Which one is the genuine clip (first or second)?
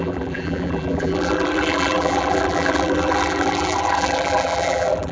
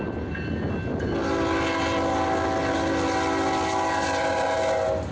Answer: second